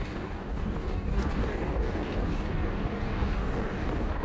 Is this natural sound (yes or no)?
no